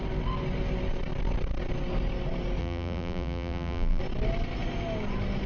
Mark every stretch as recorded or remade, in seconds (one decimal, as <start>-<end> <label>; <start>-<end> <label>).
0.0-2.6 recorded; 2.6-4.0 remade; 4.0-5.5 recorded